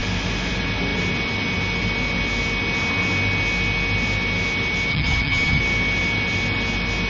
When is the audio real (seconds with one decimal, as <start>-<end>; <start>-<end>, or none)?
0.0-4.9; 5.6-7.1

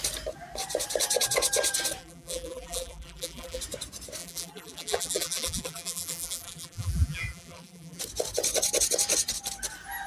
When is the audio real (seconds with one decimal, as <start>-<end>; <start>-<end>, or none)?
0.0-2.0; 3.6-4.2; 8.0-10.1

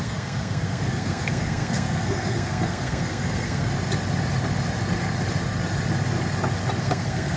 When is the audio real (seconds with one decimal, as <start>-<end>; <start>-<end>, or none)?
3.7-6.8

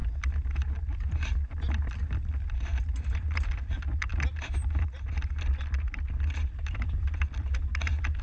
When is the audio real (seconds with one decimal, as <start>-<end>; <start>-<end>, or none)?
0.0-8.2

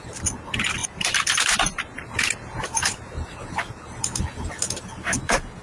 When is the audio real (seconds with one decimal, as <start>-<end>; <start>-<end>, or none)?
0.0-0.8; 4.2-4.9

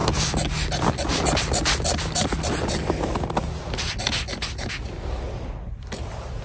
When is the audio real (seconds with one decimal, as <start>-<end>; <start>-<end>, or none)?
0.0-6.4